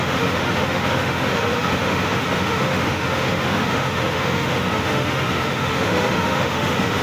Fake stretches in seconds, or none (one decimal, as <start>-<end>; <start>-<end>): 0.0-7.0